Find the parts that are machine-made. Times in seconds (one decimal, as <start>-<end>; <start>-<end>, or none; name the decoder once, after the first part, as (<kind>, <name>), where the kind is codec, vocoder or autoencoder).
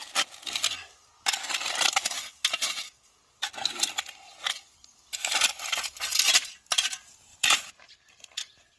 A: 7.3-7.8 (vocoder, BigVGAN v2)